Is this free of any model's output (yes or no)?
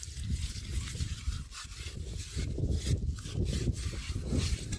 yes